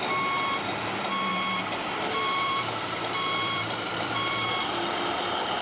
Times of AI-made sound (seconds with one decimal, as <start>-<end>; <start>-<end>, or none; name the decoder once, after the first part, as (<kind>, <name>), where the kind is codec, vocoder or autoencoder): 1.3-4.7 (vocoder, BigVGAN v2)